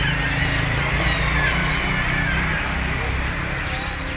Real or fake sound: real